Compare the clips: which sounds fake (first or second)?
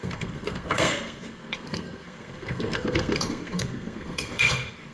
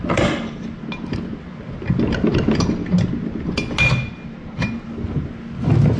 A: first